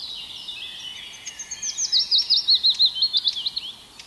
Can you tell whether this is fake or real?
real